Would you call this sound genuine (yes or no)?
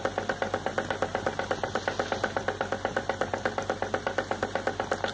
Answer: yes